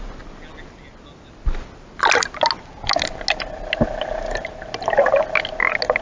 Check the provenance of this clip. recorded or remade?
recorded